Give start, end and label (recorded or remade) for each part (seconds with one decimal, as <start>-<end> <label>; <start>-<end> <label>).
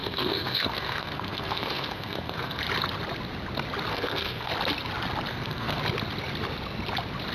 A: 0.0-2.6 remade; 2.6-3.9 recorded; 3.9-4.5 remade; 4.5-5.3 recorded; 5.3-5.8 remade; 5.8-7.3 recorded